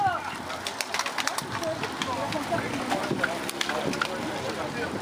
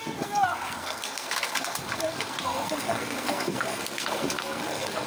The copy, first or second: second